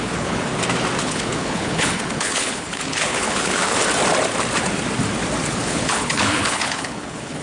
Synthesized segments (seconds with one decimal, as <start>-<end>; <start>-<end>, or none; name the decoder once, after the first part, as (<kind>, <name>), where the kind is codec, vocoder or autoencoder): 0.0-0.5 (codec, HILCodec); 1.0-3.8; 5.5-7.4